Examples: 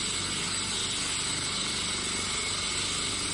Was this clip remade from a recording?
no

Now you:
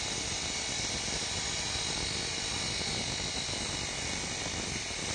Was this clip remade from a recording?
no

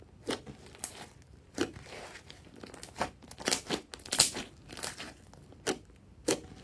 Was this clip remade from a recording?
no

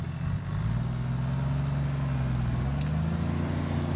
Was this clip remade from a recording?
no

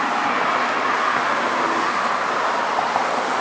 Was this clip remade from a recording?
no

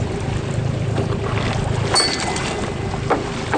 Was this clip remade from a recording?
no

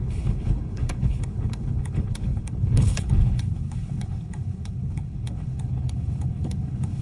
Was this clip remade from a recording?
yes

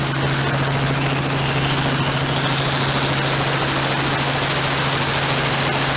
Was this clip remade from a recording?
no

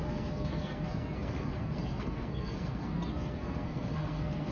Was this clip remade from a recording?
yes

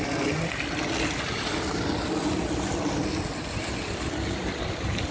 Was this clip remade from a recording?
no